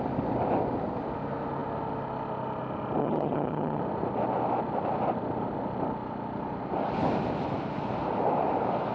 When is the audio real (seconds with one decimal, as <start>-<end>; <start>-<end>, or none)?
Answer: 0.0-3.0; 3.8-8.9